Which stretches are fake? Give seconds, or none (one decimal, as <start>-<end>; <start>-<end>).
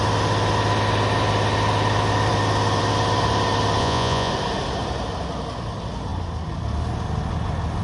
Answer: 3.8-4.3